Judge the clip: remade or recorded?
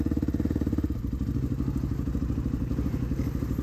recorded